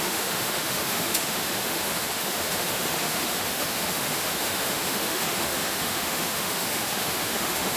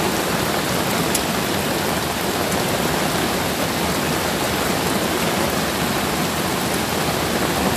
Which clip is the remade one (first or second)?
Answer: first